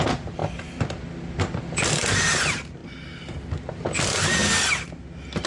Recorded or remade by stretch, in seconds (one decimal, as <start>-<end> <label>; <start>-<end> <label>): 0.0-5.5 recorded